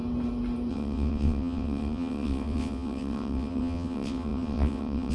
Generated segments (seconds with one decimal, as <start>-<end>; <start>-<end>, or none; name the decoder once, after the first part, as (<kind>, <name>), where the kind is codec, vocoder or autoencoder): 0.7-5.1 (vocoder, WaveNeXt)